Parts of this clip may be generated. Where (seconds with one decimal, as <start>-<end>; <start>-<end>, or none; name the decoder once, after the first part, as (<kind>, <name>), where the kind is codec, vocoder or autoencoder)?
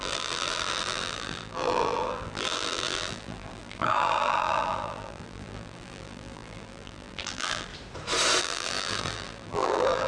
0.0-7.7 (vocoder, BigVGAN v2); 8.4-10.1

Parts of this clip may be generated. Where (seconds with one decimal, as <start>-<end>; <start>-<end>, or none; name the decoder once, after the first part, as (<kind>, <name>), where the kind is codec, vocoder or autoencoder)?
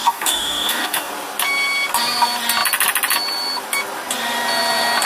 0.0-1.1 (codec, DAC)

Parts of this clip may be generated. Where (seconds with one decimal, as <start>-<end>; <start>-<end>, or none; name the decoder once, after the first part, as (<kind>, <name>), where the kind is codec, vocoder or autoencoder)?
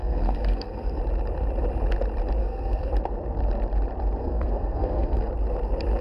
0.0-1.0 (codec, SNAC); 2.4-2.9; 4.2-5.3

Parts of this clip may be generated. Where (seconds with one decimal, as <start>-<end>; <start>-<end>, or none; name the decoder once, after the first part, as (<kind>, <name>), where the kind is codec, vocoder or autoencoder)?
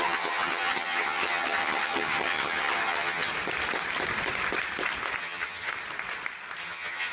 0.0-3.3 (vocoder, HiFi-GAN); 5.2-5.7; 6.6-7.1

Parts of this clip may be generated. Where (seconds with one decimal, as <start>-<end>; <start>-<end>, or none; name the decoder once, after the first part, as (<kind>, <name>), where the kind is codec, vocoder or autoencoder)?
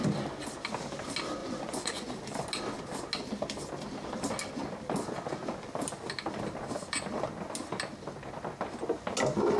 1.4-2.1 (vocoder, Vocos)